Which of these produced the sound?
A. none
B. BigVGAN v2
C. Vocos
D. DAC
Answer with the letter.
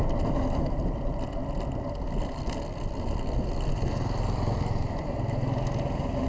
A